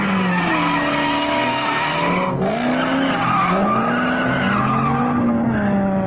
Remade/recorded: recorded